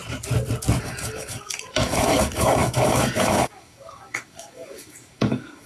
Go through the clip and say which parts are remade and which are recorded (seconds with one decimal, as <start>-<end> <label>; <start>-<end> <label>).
0.0-0.8 recorded; 0.8-5.7 remade